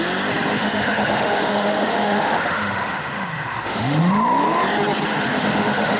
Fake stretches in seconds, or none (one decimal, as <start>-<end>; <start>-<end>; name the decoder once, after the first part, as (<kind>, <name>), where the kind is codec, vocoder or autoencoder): 0.5-4.1 (autoencoder, DAC-VAE); 5.1-6.0